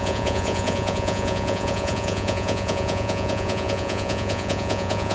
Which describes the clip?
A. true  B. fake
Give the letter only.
B